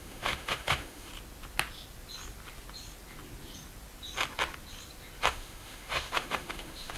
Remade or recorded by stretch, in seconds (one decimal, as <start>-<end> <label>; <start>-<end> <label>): 0.0-1.1 remade; 1.1-5.3 recorded; 5.3-7.0 remade